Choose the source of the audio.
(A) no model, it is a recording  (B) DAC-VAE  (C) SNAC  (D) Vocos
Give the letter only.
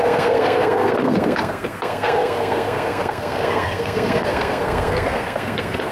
C